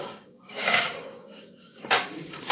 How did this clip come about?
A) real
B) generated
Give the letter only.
B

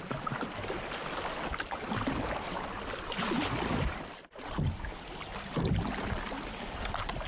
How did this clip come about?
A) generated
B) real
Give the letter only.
B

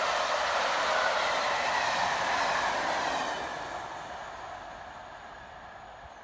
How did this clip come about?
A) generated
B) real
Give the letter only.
B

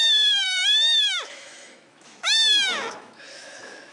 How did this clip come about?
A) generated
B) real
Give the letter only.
A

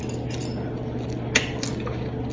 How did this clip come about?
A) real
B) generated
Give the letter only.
A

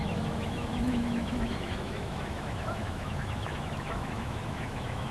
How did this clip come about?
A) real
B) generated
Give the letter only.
B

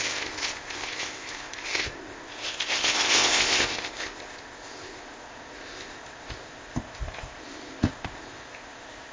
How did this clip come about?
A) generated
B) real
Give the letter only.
A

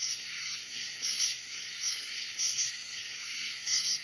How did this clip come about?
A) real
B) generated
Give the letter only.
B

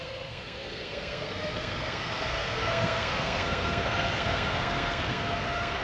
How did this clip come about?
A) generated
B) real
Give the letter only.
A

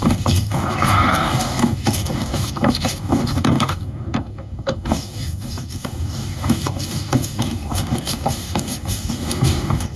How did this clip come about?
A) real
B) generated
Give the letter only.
B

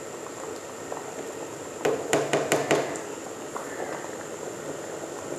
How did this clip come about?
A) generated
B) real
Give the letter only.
B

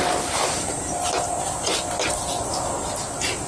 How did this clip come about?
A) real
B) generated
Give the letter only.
A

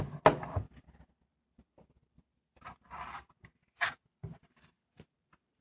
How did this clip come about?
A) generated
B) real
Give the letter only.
B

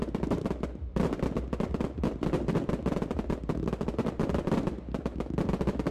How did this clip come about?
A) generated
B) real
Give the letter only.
B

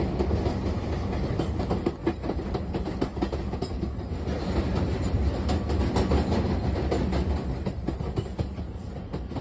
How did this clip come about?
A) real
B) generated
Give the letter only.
A